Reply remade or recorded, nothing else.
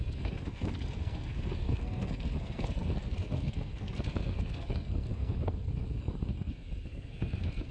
remade